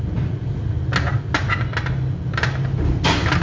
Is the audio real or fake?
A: real